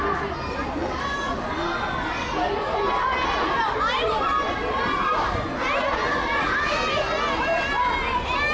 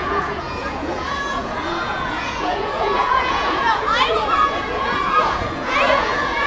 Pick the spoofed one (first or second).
second